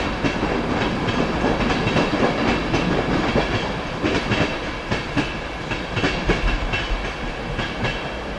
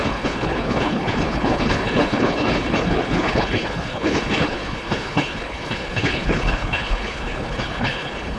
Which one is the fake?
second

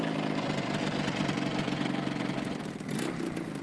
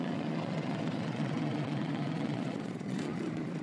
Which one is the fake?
second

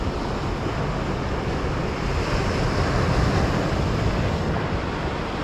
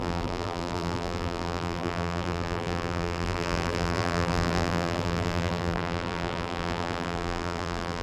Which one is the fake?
second